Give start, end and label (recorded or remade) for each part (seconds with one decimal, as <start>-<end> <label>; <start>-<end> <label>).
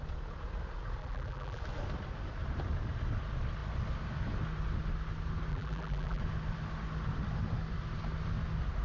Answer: 0.0-1.0 recorded; 1.0-1.6 remade; 1.6-5.5 recorded; 5.5-6.2 remade; 6.2-8.8 recorded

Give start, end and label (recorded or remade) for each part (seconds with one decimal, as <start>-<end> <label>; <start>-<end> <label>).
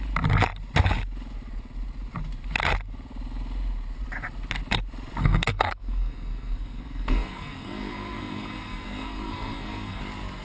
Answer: 0.0-5.2 recorded; 5.2-10.0 remade; 10.0-10.4 recorded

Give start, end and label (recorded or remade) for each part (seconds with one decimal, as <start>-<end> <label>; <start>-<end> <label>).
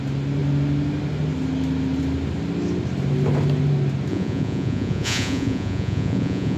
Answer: 0.0-4.1 recorded; 4.1-6.6 remade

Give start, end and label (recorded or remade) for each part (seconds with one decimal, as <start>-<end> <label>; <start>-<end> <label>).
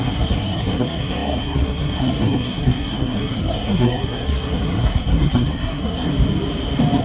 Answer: 0.0-6.1 remade; 6.1-7.0 recorded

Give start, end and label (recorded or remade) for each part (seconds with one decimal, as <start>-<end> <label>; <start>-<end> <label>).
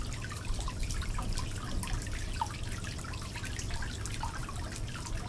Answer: 0.0-5.3 recorded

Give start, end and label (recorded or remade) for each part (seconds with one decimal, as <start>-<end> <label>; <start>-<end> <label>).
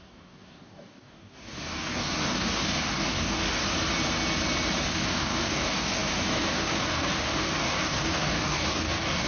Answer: 0.0-3.6 remade; 3.6-4.8 recorded; 4.8-9.3 remade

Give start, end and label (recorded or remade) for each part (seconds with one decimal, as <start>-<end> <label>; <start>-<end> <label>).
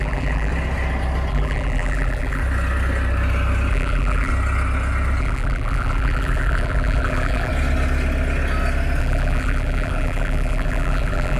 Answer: 0.0-0.5 remade; 0.5-1.3 recorded; 1.3-2.4 remade; 2.4-3.7 recorded; 3.7-4.3 remade; 4.3-5.2 recorded; 5.2-7.5 remade; 7.5-9.0 recorded; 9.0-11.4 remade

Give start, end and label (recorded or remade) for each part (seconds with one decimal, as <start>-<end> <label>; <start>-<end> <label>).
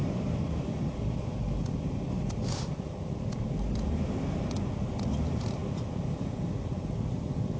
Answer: 0.0-7.6 recorded